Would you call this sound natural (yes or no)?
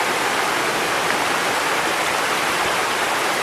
yes